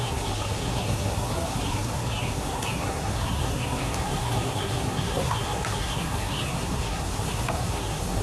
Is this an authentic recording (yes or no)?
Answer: no